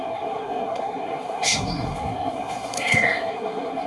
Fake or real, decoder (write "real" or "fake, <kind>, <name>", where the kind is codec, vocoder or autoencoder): fake, codec, SNAC